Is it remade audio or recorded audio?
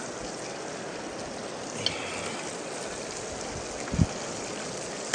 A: recorded